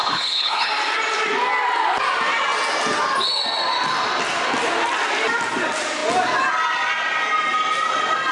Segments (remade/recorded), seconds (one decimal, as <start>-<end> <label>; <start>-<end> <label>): 0.0-0.7 remade; 0.7-8.3 recorded